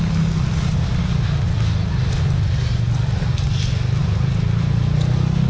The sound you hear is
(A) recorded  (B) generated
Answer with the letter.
A